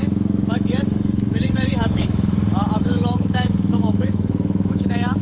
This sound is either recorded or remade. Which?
remade